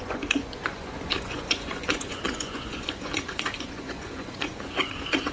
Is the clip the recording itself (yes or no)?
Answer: no